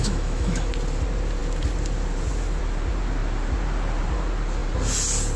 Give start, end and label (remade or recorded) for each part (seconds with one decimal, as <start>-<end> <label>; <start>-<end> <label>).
0.0-0.7 remade; 0.7-5.4 recorded